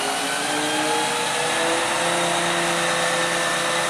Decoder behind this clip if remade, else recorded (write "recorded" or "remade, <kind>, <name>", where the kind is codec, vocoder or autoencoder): recorded